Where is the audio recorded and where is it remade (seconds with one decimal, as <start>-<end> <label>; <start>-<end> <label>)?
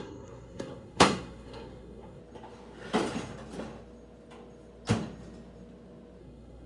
0.0-2.2 remade; 2.2-6.2 recorded; 6.2-6.7 remade